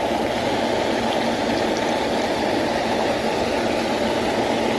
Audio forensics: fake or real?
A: real